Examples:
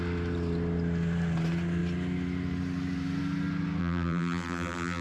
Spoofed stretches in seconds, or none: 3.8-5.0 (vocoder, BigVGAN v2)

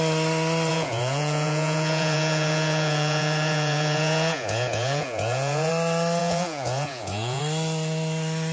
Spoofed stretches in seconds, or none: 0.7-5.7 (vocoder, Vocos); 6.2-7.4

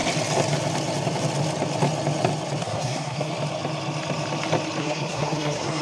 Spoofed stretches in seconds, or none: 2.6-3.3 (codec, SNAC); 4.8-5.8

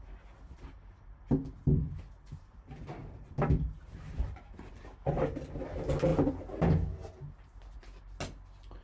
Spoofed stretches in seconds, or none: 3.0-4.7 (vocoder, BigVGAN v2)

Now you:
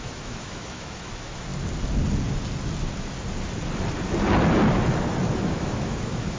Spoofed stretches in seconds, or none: 0.0-1.5 (autoencoder, DAC-VAE); 5.3-6.4